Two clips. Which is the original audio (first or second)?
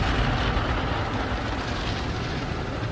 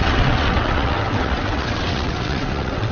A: first